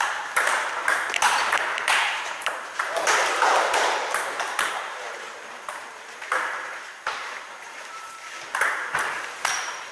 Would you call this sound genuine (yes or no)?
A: no